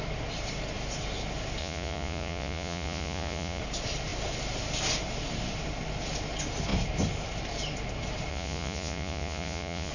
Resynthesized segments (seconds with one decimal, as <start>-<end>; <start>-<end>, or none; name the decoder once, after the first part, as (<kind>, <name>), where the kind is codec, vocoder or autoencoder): 1.6-3.6 (vocoder, Vocos); 8.3-9.9